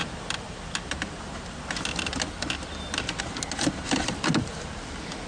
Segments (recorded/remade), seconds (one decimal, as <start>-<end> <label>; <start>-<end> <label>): 0.0-5.3 recorded